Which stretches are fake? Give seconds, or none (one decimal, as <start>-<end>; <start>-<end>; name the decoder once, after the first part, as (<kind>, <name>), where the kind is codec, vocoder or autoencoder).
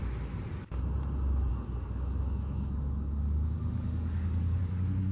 1.5-4.6 (codec, DAC)